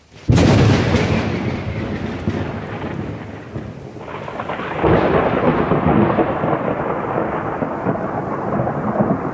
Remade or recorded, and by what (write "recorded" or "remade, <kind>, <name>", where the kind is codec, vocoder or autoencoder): recorded